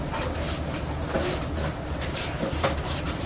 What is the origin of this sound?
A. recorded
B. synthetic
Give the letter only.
A